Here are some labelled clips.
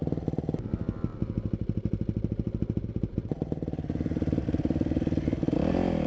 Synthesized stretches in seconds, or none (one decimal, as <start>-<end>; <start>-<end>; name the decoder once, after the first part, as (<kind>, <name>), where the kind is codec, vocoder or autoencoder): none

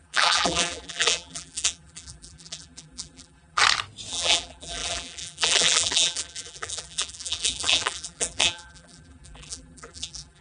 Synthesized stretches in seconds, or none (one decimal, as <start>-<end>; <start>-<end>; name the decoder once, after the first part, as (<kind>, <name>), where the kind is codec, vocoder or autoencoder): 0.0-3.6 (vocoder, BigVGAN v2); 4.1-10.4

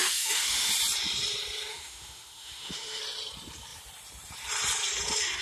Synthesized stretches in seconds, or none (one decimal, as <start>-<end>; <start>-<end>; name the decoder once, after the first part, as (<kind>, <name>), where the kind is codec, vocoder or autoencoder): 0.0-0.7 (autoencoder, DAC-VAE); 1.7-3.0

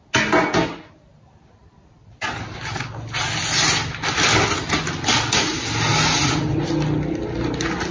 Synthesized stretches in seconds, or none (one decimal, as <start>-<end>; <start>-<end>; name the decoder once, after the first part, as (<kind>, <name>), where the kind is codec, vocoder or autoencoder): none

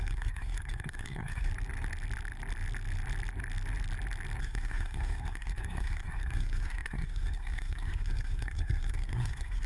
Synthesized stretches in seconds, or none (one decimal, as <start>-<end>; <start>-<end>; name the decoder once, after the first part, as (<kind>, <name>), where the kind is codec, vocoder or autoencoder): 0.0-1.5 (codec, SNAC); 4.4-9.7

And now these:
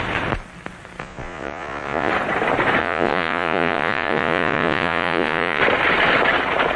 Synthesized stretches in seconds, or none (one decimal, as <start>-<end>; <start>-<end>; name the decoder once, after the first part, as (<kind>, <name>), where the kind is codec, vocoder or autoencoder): 1.0-2.1 (vocoder, Vocos); 2.8-5.6

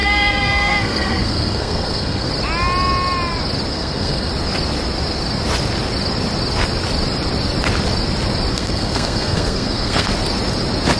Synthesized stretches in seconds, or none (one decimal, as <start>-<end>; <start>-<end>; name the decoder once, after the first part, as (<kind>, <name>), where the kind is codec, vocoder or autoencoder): 0.0-2.3 (codec, SNAC); 3.7-4.3; 8.5-10.1

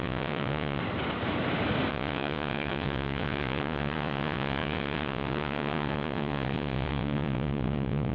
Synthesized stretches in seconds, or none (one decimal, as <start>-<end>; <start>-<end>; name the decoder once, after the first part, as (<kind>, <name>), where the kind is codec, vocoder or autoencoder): 0.0-0.8 (vocoder, WaveNeXt); 1.9-8.1